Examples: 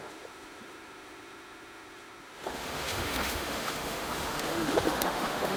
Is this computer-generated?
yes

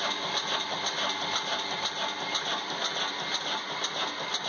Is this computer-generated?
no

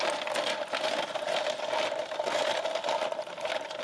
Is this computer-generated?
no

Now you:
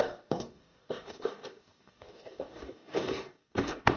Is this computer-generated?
yes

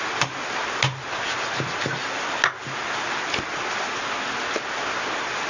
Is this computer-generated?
no